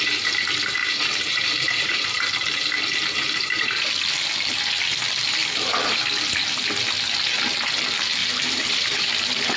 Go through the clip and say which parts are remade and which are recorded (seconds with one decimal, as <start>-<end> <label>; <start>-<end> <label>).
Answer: 0.0-0.8 recorded; 0.8-3.9 remade; 3.9-5.4 recorded; 5.4-6.0 remade; 6.0-8.2 recorded; 8.2-9.1 remade; 9.1-9.6 recorded